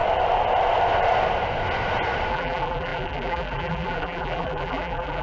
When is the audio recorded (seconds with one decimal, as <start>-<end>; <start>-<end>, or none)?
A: 0.0-2.3